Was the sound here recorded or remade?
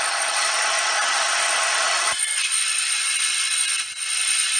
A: remade